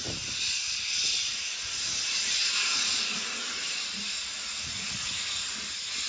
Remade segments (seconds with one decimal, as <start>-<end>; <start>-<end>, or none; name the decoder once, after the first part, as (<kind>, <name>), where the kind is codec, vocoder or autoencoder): 4.4-5.4 (vocoder, Vocos)